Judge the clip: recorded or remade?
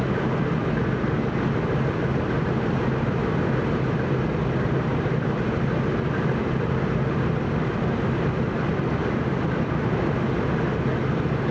recorded